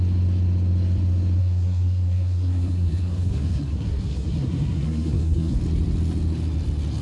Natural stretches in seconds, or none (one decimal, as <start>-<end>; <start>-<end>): 0.0-1.4; 5.6-7.0